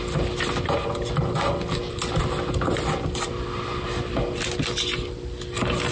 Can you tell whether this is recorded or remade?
recorded